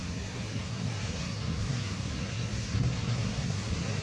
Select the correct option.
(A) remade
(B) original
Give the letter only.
A